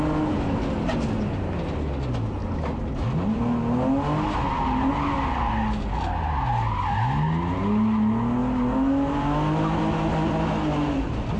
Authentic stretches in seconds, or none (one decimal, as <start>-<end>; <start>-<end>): 0.0-11.4